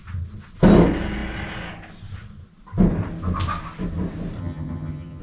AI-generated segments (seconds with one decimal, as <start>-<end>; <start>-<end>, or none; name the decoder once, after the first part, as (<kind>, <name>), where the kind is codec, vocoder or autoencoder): 4.4-5.2 (vocoder, HiFi-GAN)